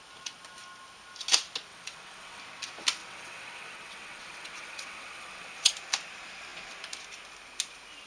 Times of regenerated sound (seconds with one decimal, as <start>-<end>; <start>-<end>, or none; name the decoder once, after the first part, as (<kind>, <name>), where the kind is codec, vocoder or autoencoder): 1.7-2.4 (vocoder, WaveNeXt); 3.0-5.7